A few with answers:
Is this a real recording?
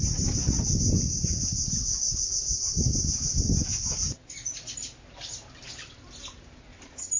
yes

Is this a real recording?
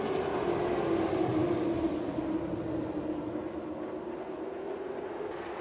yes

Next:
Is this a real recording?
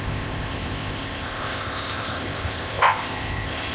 no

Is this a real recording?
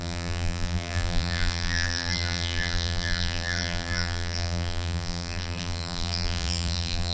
no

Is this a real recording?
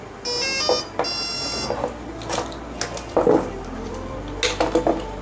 yes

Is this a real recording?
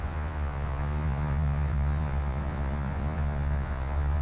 no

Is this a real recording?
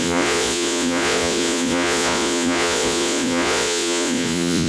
no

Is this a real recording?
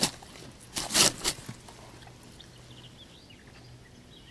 yes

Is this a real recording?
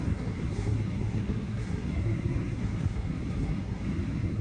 no